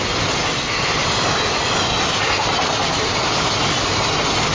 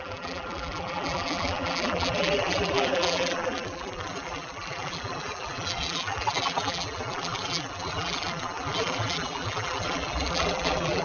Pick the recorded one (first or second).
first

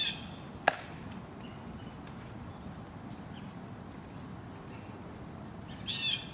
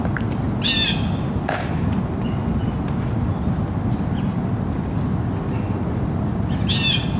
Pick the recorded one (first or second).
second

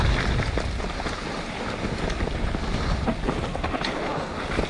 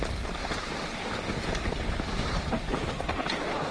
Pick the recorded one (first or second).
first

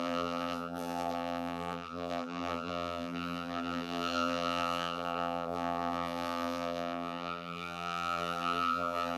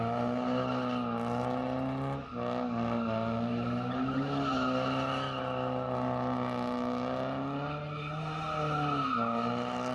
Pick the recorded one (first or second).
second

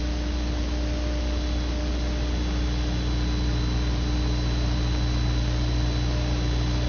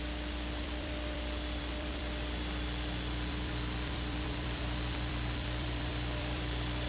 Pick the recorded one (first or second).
first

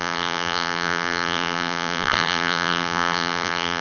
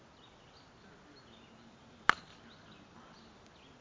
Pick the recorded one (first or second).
second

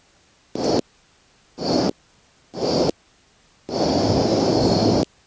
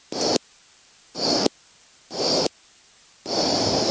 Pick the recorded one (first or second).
first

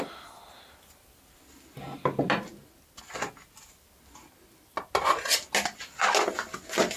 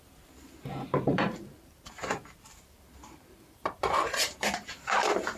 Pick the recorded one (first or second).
first